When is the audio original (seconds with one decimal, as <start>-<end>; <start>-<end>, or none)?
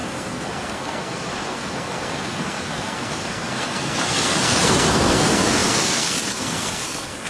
none